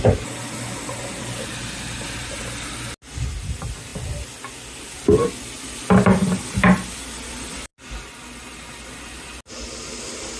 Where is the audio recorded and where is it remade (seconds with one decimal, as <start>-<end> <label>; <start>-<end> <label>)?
0.0-10.4 recorded